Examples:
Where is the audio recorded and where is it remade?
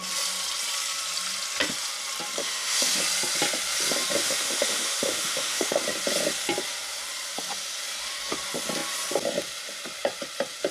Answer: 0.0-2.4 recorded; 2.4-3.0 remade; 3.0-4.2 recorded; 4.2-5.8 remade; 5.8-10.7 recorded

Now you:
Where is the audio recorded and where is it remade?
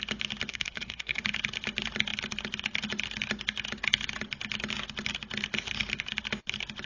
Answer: 0.0-0.5 recorded; 0.5-1.2 remade; 1.2-6.9 recorded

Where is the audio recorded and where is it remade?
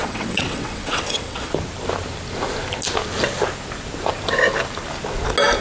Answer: 0.0-1.5 remade; 1.5-5.6 recorded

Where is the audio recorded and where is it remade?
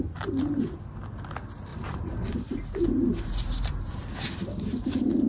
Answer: 0.0-1.7 recorded; 1.7-5.3 remade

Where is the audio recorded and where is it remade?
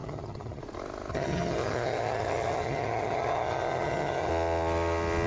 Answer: 0.0-0.6 remade; 0.6-1.1 recorded; 1.1-4.3 remade; 4.3-5.3 recorded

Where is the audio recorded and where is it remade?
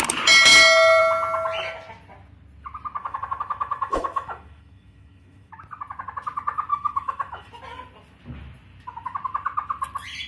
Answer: 0.0-3.0 recorded; 3.0-5.5 remade; 5.5-6.7 recorded; 6.7-7.5 remade; 7.5-10.3 recorded